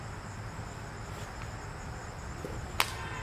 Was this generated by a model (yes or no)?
no